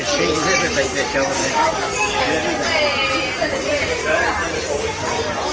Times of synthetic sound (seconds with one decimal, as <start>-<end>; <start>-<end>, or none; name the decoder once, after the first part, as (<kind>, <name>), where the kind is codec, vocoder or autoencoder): 1.4-2.2 (codec, DAC)